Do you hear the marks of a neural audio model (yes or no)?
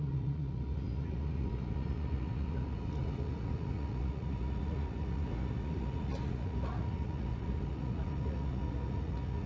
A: yes